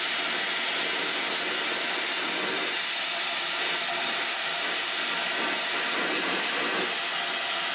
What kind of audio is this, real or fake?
real